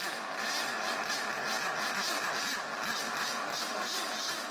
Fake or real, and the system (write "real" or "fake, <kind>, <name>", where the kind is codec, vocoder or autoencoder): real